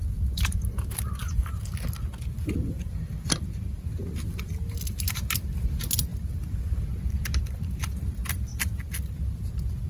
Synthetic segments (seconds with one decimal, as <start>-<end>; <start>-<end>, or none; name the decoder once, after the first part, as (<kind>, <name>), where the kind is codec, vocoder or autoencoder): none